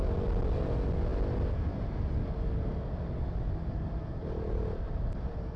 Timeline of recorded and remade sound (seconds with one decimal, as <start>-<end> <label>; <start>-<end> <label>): 0.0-5.6 recorded